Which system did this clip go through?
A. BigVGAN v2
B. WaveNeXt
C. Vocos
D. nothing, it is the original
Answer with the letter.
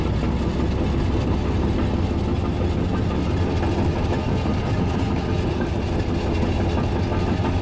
D